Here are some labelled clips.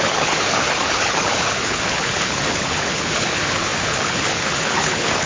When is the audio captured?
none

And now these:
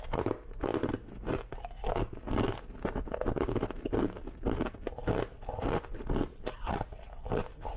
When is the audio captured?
0.0-7.8

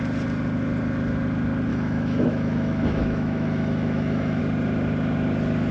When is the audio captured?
0.0-1.7; 4.4-5.7

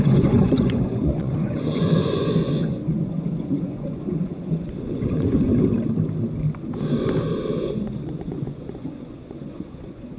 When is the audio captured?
5.5-7.6

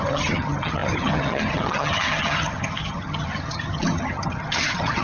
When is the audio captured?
none

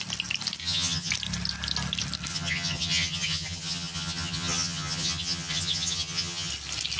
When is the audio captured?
0.0-0.6; 1.1-2.3; 6.5-7.0